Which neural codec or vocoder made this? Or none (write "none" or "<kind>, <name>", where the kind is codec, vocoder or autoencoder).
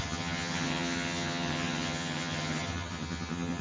vocoder, HiFi-GAN